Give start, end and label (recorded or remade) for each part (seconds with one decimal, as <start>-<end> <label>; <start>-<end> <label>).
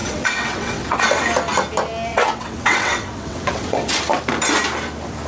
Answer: 0.0-1.0 remade; 1.0-2.1 recorded; 2.1-4.0 remade; 4.0-5.3 recorded